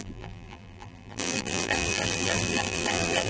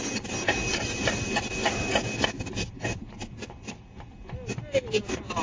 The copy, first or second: first